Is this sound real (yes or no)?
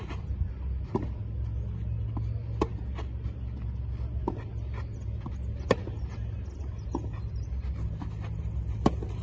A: yes